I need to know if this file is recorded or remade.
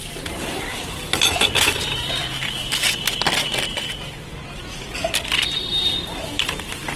recorded